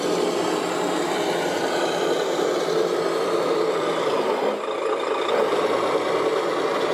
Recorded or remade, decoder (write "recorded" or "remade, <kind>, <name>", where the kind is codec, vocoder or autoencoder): remade, vocoder, BigVGAN v2